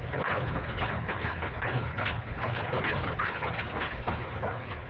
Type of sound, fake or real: fake